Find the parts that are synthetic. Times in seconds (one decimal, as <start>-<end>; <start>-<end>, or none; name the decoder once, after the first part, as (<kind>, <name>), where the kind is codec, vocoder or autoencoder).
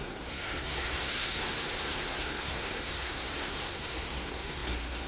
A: 0.0-5.1 (codec, SNAC)